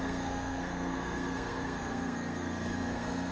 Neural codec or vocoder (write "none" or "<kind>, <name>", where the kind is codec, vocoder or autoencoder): codec, SNAC